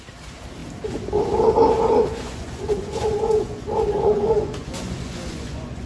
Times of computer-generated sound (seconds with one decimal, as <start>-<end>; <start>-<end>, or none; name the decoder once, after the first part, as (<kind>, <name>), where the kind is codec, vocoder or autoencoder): 2.1-5.9 (vocoder, Vocos)